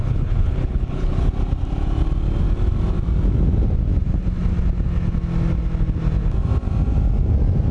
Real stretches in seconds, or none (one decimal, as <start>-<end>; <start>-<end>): 1.3-7.7